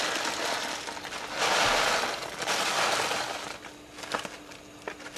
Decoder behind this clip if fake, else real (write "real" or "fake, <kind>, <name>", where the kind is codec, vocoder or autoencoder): real